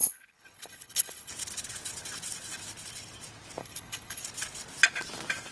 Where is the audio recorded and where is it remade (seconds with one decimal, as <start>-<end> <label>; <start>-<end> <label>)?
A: 0.0-1.3 remade; 1.3-3.6 recorded; 3.6-4.2 remade; 4.2-5.5 recorded

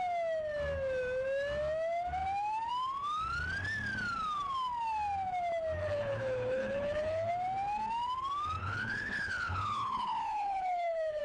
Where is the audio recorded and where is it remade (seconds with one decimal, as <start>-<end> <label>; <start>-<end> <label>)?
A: 0.0-5.8 recorded; 5.8-7.3 remade; 7.3-8.6 recorded; 8.6-11.2 remade

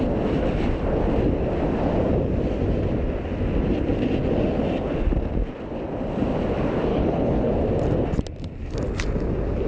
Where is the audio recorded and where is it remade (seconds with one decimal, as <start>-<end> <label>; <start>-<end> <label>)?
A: 0.0-6.9 recorded; 6.9-7.5 remade; 7.5-9.7 recorded

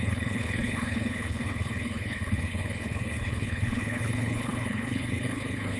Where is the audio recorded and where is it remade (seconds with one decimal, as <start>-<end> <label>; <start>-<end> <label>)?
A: 0.0-5.8 remade

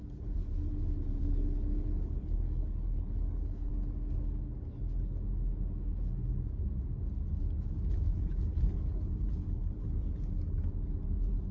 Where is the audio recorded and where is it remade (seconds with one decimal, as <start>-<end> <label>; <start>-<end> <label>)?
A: 0.0-1.2 recorded; 1.2-3.7 remade; 3.7-8.1 recorded; 8.1-10.7 remade; 10.7-11.5 recorded